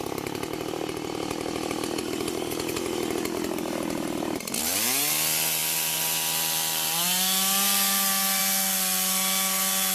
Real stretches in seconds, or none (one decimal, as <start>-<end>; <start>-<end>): 0.0-9.9